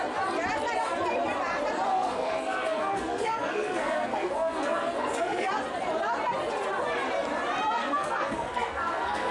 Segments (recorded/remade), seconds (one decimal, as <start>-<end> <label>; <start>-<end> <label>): 0.0-1.9 recorded; 1.9-5.5 remade; 5.5-7.8 recorded; 7.8-9.3 remade